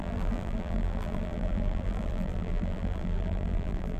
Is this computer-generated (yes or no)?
yes